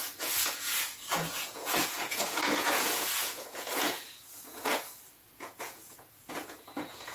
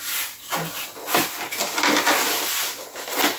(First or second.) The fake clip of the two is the first